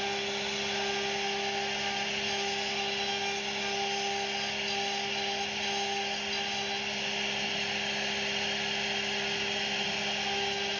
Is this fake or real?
real